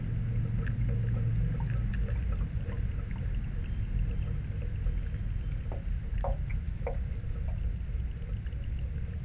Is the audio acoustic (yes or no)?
yes